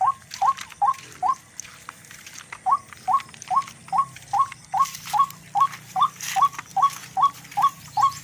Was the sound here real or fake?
real